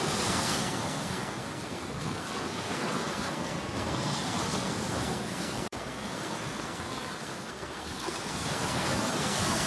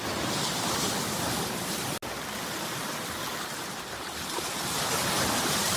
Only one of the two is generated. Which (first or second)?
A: first